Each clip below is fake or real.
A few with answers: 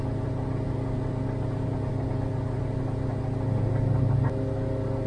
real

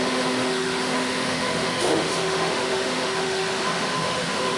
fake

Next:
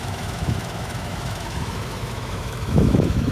fake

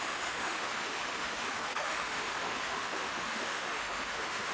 fake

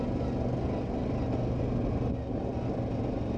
real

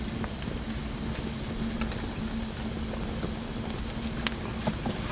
real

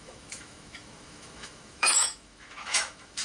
fake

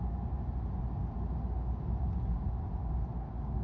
real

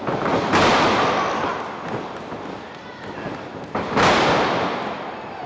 real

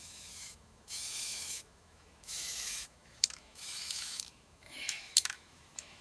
fake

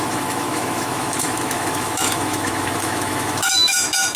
fake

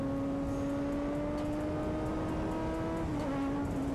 real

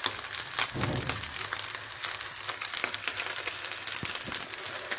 real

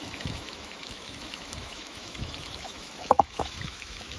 fake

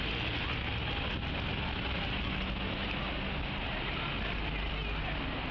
real